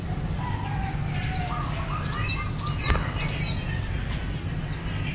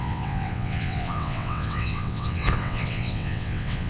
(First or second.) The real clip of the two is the first